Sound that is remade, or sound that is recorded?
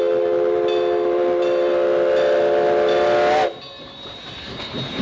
recorded